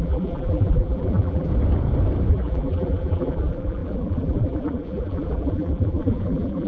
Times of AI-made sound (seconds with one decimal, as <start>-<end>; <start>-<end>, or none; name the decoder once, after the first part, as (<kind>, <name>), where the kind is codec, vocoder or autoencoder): 0.0-1.5 (vocoder, BigVGAN v2); 2.3-6.7